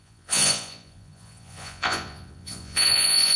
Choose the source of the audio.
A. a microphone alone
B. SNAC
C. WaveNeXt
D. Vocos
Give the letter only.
D